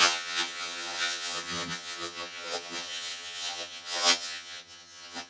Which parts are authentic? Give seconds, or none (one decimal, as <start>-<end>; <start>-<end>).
none